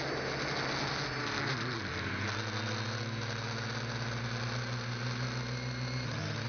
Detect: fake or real real